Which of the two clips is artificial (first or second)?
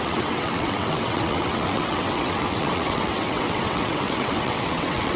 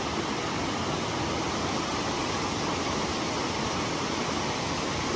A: first